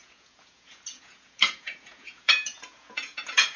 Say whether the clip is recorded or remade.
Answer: remade